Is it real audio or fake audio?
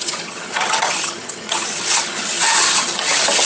fake